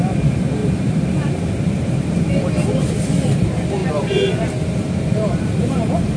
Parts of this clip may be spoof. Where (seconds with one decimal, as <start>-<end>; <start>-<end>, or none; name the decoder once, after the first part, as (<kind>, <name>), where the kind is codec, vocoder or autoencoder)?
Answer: 0.6-2.9 (vocoder, BigVGAN v2); 3.8-6.2